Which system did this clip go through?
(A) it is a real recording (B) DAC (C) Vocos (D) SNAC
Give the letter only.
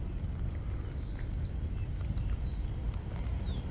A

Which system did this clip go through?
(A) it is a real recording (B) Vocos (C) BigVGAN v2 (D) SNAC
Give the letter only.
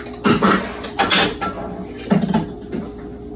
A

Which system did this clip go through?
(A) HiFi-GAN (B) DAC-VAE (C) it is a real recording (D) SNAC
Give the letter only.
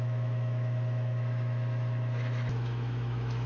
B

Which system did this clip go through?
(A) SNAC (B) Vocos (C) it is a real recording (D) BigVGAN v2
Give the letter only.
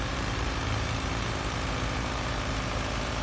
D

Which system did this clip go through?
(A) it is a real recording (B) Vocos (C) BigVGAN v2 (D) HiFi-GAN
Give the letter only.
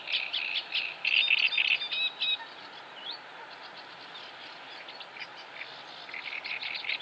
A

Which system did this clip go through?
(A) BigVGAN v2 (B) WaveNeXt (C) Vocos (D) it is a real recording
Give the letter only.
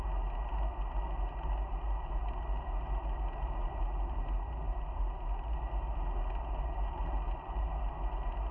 D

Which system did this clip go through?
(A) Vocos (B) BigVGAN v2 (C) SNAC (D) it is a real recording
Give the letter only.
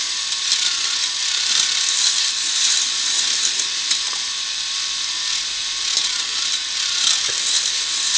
D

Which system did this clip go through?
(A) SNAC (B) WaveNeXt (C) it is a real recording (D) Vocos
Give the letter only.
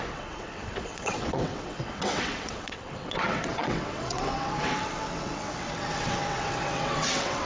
B